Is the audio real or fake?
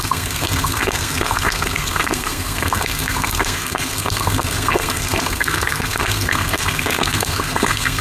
fake